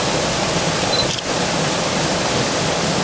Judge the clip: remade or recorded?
recorded